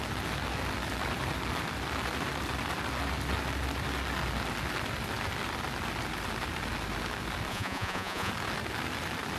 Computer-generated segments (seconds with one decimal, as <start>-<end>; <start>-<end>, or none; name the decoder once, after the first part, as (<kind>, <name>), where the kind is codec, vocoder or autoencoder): 7.5-8.3 (vocoder, Vocos)